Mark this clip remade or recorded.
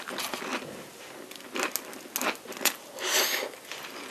recorded